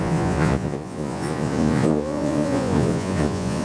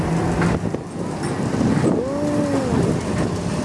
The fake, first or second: first